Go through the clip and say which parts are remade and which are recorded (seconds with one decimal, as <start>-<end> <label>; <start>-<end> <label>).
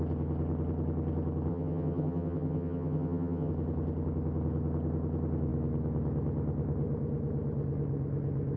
0.0-1.5 recorded; 1.5-3.5 remade; 3.5-8.6 recorded